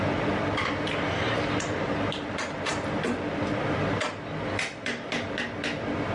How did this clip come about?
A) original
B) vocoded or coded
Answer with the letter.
A